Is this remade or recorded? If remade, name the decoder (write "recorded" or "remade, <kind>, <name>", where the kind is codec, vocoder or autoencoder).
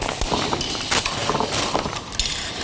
recorded